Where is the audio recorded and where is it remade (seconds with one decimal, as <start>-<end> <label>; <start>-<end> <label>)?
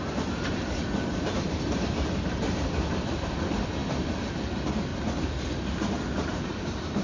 0.0-3.8 remade; 3.8-4.3 recorded; 4.3-4.9 remade; 4.9-5.5 recorded; 5.5-7.0 remade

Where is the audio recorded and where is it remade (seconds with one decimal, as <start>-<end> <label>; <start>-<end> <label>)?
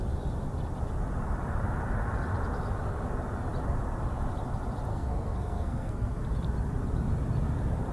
0.0-4.9 recorded; 4.9-6.2 remade; 6.2-7.9 recorded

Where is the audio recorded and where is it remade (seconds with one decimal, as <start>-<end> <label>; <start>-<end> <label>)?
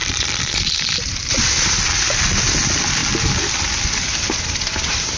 0.0-5.2 recorded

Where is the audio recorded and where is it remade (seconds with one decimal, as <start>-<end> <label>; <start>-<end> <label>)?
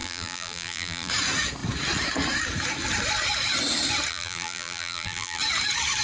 0.0-1.1 remade; 1.1-4.1 recorded; 4.1-5.4 remade; 5.4-6.0 recorded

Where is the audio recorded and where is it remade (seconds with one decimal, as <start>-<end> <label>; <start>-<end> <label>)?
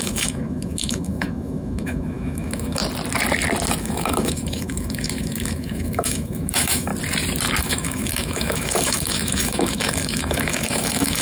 0.0-2.8 remade; 2.8-3.8 recorded; 3.8-6.9 remade; 6.9-7.6 recorded; 7.6-11.2 remade